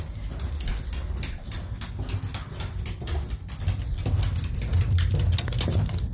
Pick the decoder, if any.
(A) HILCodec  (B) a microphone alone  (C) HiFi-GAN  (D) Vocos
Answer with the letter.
B